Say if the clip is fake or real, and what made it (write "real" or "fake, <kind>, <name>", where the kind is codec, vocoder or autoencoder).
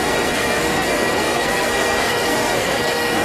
fake, codec, SNAC